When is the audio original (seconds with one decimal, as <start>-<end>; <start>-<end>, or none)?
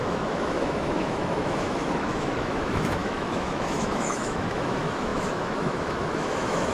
none